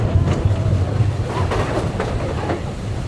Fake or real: real